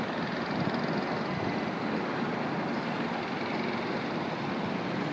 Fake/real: real